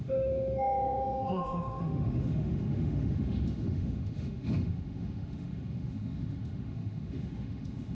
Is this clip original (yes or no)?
no